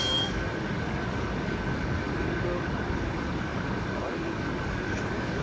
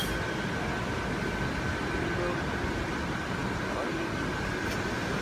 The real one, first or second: second